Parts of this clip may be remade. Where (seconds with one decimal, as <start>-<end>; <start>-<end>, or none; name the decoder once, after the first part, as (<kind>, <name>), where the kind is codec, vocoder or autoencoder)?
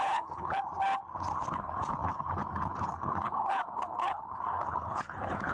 0.0-0.6 (codec, HILCodec); 1.5-5.5